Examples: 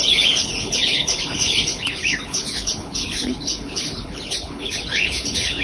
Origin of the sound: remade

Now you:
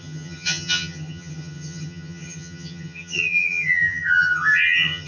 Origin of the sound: remade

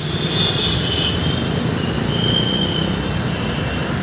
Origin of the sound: recorded